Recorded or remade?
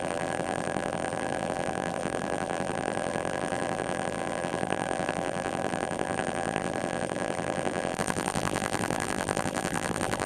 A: remade